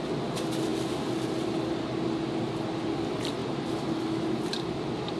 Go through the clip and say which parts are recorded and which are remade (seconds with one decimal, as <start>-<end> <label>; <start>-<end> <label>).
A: 0.0-3.4 recorded; 3.4-3.9 remade; 3.9-5.2 recorded